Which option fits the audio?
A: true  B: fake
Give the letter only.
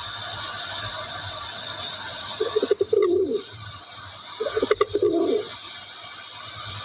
A